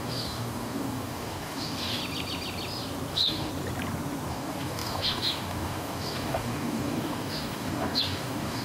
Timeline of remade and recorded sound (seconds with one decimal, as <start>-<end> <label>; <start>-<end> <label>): 0.0-2.0 remade; 2.0-3.1 recorded; 3.1-3.5 remade; 3.5-4.3 recorded; 4.3-8.6 remade